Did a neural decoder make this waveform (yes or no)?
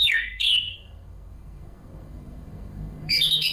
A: yes